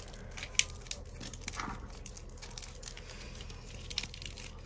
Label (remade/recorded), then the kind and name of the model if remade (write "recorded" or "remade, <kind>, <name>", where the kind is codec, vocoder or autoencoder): recorded